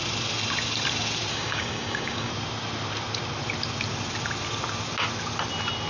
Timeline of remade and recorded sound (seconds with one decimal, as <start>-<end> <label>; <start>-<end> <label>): 0.0-1.3 recorded; 1.3-2.3 remade; 2.3-5.9 recorded